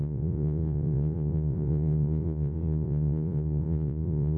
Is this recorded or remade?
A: remade